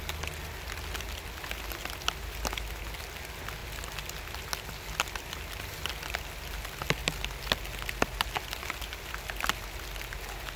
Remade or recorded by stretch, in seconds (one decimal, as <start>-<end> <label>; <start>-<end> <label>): 0.0-10.6 recorded